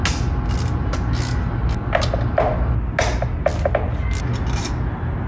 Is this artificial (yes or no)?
no